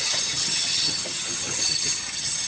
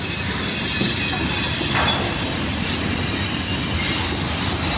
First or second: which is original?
second